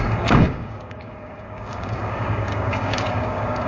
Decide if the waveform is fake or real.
fake